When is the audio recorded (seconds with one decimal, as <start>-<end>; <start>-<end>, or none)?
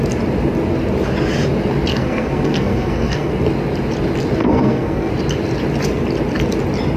0.0-1.9; 3.3-4.4; 5.1-7.0